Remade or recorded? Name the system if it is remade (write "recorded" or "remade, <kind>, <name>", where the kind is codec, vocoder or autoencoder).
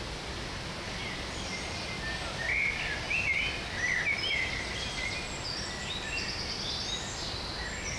recorded